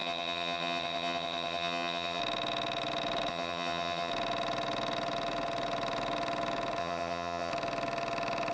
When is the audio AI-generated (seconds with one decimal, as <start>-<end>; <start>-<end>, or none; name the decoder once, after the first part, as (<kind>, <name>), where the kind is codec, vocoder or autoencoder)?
0.0-2.2 (vocoder, HiFi-GAN); 3.3-4.1; 6.8-7.5